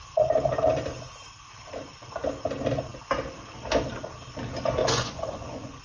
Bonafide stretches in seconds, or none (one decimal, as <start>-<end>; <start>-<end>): 0.0-4.8